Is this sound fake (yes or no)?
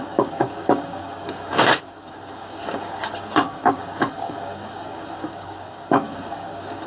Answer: yes